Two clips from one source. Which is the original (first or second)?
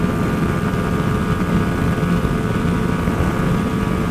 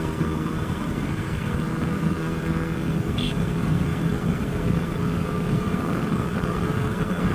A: first